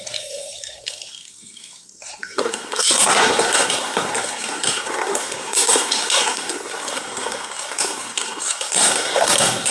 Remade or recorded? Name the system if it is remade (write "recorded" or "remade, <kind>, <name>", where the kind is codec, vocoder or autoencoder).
remade, codec, SNAC